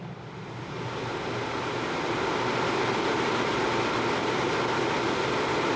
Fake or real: real